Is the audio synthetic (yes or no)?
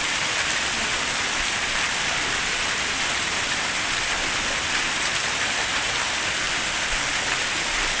no